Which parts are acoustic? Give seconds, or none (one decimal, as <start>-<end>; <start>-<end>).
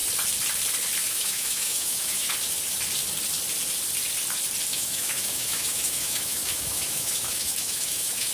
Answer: 0.0-1.0; 2.3-4.7